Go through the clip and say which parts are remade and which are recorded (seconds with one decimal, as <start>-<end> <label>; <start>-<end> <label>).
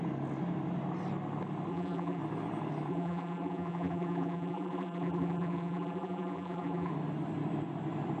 0.0-1.7 recorded; 1.7-2.2 remade; 2.2-2.9 recorded; 2.9-6.9 remade; 6.9-8.2 recorded